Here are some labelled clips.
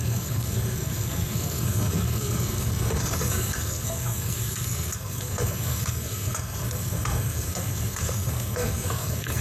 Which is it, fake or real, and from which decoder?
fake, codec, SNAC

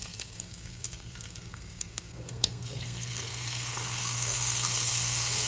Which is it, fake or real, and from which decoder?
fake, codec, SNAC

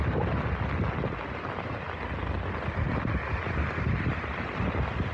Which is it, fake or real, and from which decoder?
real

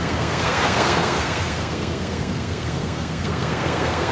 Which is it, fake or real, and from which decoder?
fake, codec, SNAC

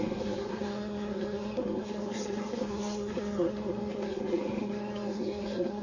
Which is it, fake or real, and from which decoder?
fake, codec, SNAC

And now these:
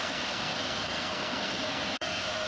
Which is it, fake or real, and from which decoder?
fake, codec, SNAC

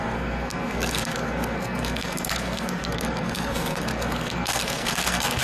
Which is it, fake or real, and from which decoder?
fake, codec, SNAC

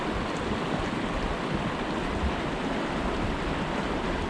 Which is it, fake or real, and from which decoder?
real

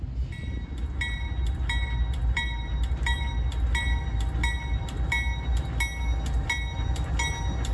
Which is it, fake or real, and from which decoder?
real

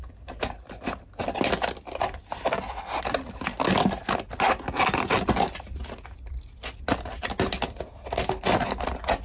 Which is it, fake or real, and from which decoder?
real